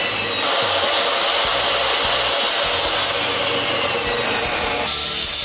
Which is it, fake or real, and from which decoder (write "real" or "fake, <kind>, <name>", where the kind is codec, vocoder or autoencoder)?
real